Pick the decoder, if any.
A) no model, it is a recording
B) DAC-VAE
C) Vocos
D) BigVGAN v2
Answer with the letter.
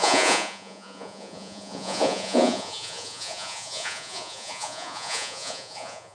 C